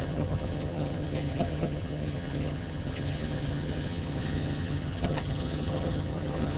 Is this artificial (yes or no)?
yes